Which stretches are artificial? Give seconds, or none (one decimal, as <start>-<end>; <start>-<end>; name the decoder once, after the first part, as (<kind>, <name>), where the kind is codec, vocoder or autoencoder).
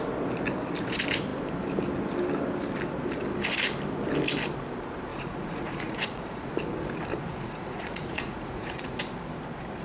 5.1-6.5 (vocoder, Vocos); 7.1-9.0